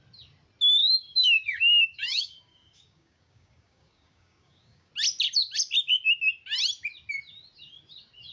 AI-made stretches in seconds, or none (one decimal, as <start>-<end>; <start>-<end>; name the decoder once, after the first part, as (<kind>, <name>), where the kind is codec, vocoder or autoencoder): 0.8-4.9 (codec, DAC)